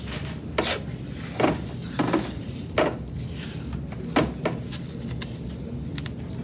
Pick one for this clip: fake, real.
real